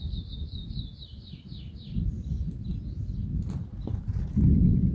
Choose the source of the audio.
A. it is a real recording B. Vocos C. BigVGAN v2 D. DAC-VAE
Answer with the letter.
A